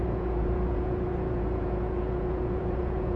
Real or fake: fake